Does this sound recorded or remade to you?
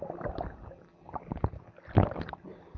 recorded